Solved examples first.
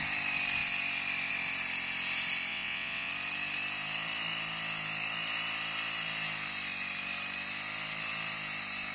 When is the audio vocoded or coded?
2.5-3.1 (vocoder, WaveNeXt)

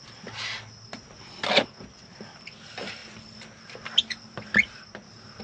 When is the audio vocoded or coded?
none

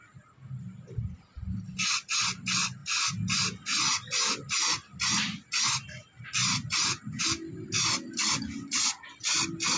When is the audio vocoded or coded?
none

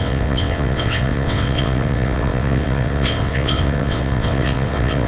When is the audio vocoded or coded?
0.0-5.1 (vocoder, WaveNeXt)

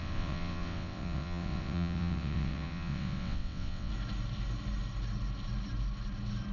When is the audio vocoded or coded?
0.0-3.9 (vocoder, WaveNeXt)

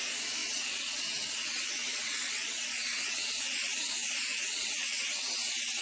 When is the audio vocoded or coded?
0.4-3.9 (vocoder, WaveNeXt); 4.3-5.3